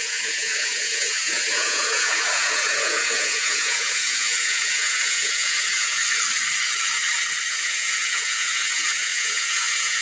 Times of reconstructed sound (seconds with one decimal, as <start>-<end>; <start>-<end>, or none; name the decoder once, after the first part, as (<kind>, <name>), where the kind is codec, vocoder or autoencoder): 0.0-6.0 (vocoder, Vocos); 7.5-10.0